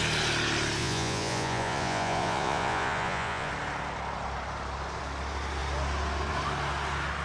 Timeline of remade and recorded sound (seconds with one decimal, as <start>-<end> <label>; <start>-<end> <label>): 0.0-0.8 recorded; 0.8-3.5 remade; 3.5-7.2 recorded